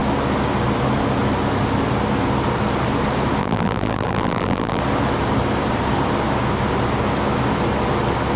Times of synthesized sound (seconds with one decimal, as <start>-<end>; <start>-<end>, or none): 3.4-4.8

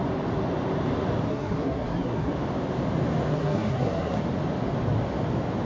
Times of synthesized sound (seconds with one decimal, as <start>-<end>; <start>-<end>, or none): 1.3-2.3; 3.3-4.2

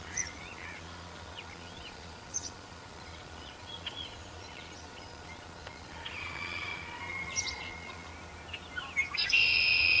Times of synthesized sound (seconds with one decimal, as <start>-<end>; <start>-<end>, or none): 0.0-8.1; 9.2-10.0

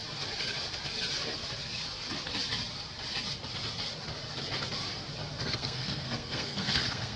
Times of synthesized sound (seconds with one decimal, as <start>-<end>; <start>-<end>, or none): 5.4-7.2

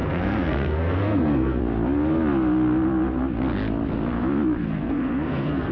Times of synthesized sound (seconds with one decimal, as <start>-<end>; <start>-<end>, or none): 0.0-1.6; 4.6-5.7

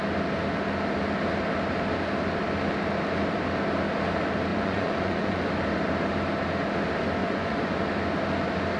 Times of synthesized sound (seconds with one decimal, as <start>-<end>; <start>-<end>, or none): 4.5-5.5; 7.2-7.9

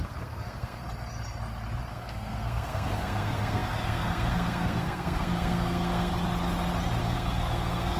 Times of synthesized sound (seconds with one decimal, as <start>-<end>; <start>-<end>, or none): 0.0-0.8; 1.9-6.1; 7.0-8.0

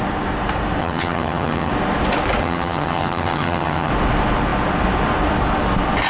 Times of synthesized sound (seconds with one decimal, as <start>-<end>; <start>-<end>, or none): 0.8-1.7; 2.4-3.9